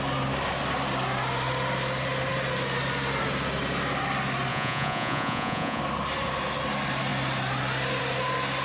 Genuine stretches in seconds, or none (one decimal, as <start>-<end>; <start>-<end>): 0.0-4.5; 5.8-8.6